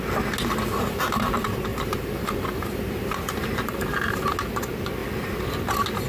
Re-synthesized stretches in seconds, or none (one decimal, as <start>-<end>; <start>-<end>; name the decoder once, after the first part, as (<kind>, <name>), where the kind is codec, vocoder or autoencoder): 1.7-4.3 (vocoder, BigVGAN v2); 5.0-5.6